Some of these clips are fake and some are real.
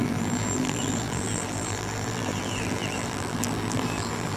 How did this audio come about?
fake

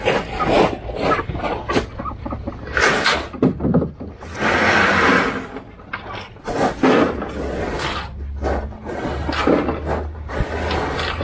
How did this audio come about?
real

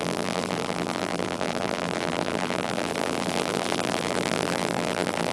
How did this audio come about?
fake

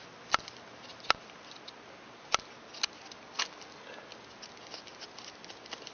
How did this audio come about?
real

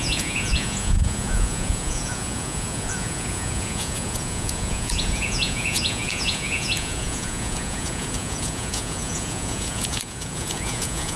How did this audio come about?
fake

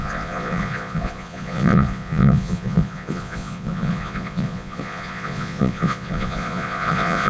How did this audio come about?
fake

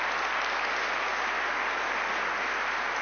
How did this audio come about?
real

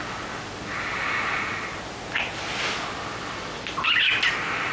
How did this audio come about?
real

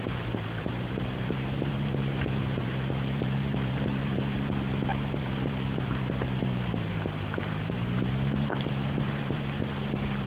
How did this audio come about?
fake